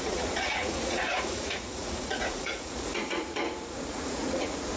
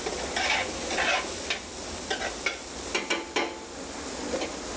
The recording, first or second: second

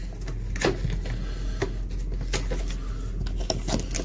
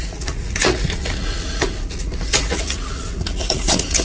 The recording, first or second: first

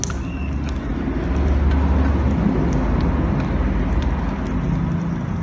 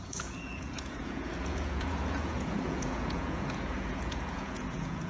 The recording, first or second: first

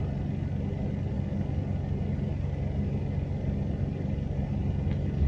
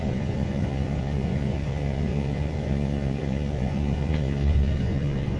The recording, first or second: first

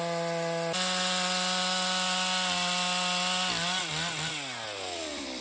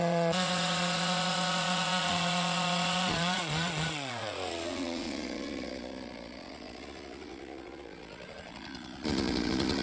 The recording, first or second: first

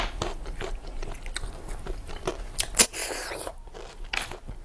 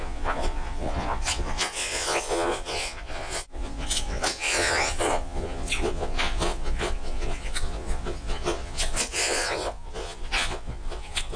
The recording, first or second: first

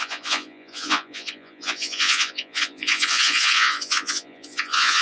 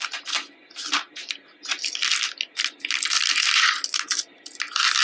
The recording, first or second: second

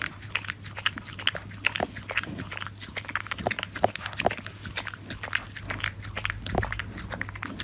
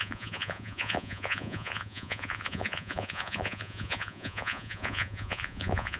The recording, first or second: first